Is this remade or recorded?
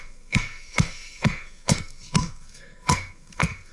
remade